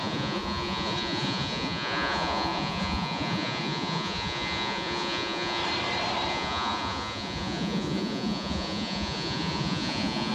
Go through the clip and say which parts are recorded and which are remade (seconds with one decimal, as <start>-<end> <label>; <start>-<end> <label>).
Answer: 0.0-5.6 remade; 5.6-6.3 recorded; 6.3-10.3 remade